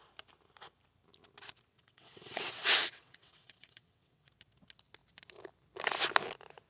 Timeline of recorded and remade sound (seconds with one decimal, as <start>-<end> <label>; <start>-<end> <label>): 0.0-1.7 recorded; 1.7-4.3 remade; 4.3-6.7 recorded